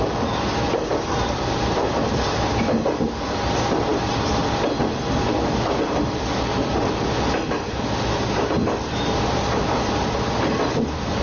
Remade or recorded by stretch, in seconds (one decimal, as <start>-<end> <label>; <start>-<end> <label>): 0.0-11.2 recorded